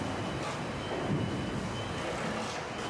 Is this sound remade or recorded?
recorded